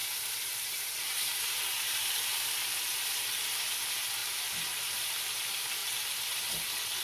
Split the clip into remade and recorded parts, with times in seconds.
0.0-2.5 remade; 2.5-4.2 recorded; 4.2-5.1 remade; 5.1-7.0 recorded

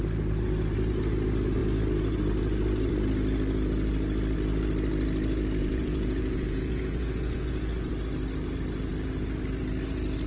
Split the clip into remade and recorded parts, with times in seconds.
0.0-5.6 recorded; 5.6-7.9 remade; 7.9-10.3 recorded